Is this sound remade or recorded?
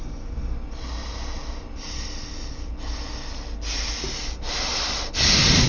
recorded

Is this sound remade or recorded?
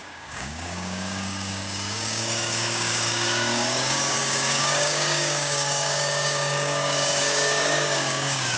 remade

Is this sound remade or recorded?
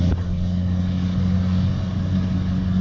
remade